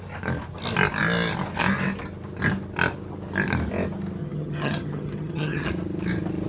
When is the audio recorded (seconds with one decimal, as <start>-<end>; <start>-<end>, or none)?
0.0-4.2; 5.7-6.5